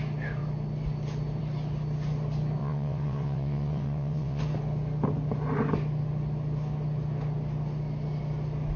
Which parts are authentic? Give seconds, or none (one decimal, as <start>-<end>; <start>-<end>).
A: 0.0-2.6; 4.4-8.8